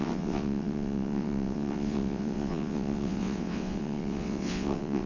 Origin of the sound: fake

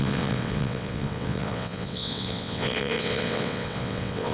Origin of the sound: fake